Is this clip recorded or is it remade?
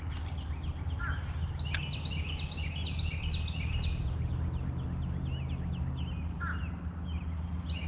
recorded